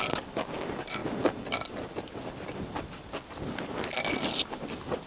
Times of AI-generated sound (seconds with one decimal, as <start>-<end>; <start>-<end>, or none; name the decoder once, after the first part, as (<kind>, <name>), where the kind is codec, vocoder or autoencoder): none